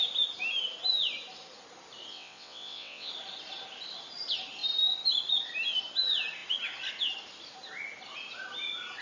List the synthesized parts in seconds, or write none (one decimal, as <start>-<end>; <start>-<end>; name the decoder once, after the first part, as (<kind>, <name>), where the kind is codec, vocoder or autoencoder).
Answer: 2.1-3.1 (vocoder, WaveNeXt)